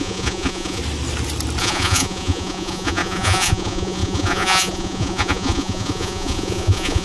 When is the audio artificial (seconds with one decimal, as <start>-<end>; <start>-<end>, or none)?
0.0-0.8; 1.6-7.0